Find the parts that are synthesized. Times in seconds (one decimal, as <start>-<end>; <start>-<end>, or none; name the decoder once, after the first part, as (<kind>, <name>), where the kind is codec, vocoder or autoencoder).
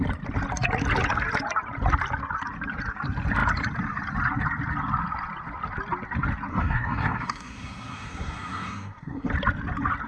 6.5-9.3 (codec, SNAC)